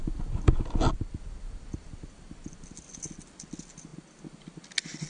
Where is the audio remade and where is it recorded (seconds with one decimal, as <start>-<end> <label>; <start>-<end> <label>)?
0.0-5.1 recorded